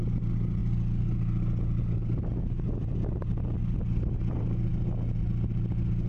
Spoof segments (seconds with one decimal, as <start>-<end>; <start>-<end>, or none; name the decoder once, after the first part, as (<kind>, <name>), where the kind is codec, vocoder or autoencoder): none